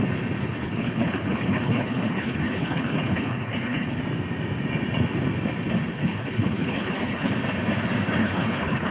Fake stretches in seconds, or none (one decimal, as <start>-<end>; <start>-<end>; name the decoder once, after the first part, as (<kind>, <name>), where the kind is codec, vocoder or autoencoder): 0.4-4.0 (codec, HILCodec); 5.9-7.3; 8.2-8.9